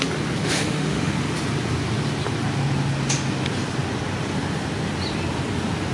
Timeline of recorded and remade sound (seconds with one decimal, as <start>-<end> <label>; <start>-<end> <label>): 0.0-0.4 recorded; 0.4-1.1 remade; 1.1-5.9 recorded